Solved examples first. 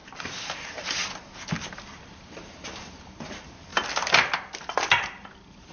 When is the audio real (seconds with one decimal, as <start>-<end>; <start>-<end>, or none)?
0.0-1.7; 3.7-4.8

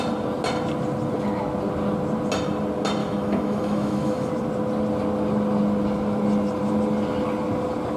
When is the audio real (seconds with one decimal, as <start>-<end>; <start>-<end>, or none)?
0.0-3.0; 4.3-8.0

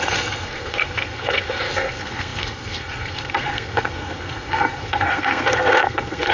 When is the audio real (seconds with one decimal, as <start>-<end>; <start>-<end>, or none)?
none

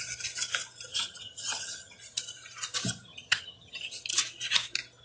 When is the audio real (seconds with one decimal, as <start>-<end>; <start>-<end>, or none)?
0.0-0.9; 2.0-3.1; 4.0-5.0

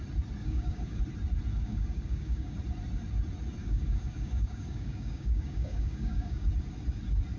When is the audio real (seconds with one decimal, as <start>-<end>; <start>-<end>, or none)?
0.0-0.4; 1.0-1.5; 2.6-3.6; 6.5-7.4